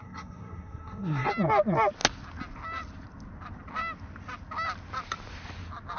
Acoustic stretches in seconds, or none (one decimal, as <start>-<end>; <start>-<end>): 1.3-6.0